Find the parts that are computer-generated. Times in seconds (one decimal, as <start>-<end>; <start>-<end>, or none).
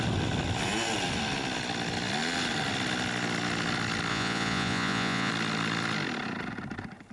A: 4.1-5.3